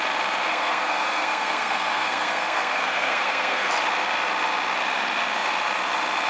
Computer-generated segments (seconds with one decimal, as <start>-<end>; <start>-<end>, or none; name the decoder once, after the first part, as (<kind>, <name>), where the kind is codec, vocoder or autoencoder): 0.5-3.7 (codec, SNAC)